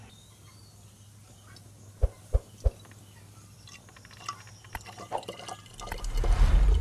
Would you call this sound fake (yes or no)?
no